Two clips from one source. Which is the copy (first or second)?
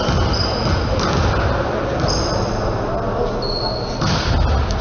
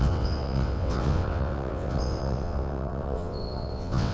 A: second